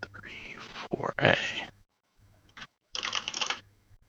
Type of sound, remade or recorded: remade